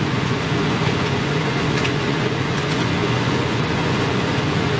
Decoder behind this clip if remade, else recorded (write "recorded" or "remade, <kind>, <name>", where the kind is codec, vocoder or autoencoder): remade, vocoder, Vocos